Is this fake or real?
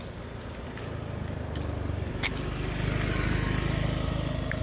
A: real